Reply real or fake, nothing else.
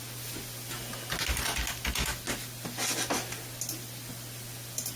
real